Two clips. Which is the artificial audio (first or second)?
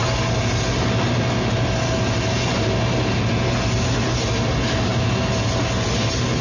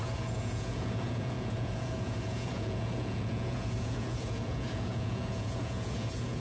second